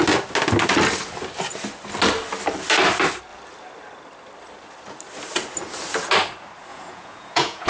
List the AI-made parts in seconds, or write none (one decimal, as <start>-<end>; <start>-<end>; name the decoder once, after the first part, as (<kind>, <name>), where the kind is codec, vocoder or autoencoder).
6.7-7.7 (vocoder, Vocos)